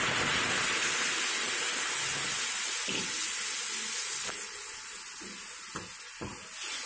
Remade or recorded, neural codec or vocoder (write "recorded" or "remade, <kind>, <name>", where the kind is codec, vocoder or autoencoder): recorded